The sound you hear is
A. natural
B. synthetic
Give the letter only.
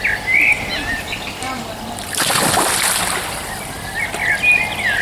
A